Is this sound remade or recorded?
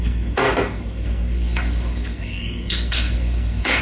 remade